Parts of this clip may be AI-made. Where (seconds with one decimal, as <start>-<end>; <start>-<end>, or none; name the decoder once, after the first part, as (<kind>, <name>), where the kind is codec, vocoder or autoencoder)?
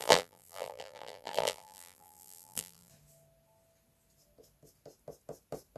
0.0-2.9 (vocoder, BigVGAN v2)